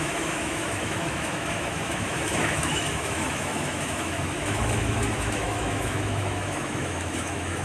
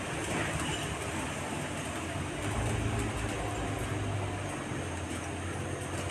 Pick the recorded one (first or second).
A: second